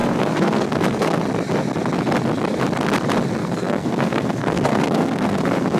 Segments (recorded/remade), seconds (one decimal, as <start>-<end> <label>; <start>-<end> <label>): 0.0-1.2 remade; 1.2-3.4 recorded; 3.4-5.8 remade